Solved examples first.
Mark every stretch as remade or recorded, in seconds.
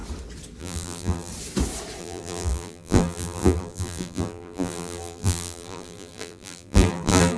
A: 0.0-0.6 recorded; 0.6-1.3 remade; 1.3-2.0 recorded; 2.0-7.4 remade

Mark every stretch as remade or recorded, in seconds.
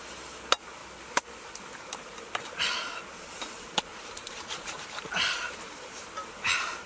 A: 0.0-3.9 recorded; 3.9-6.3 remade; 6.3-6.9 recorded